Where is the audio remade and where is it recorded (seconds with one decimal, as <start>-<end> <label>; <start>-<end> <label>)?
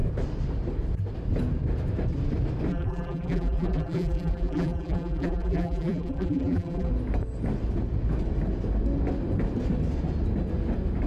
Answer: 0.0-2.7 recorded; 2.7-6.9 remade; 6.9-11.1 recorded